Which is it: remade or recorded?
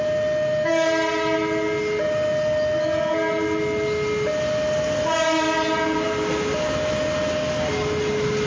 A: recorded